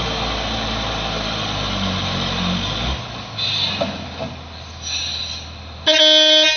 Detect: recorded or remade recorded